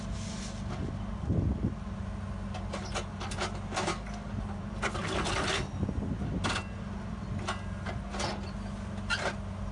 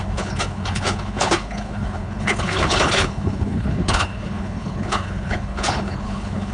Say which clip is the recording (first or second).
first